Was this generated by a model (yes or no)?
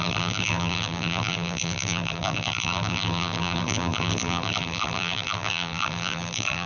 yes